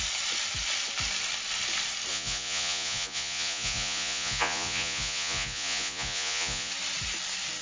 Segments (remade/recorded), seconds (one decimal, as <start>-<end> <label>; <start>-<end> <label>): 0.0-2.1 recorded; 2.1-6.7 remade; 6.7-7.6 recorded

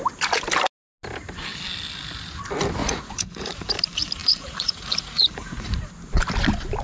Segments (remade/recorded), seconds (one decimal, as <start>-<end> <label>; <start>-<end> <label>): 0.0-2.8 recorded; 2.8-3.5 remade; 3.5-4.2 recorded; 4.2-5.9 remade; 5.9-6.8 recorded

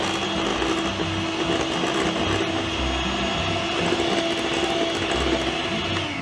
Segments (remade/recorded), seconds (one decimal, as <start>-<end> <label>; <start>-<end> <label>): 0.0-6.2 recorded